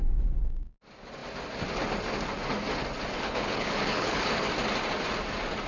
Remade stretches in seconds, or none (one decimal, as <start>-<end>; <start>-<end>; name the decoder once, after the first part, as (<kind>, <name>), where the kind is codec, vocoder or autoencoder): 3.1-4.5 (codec, HILCodec)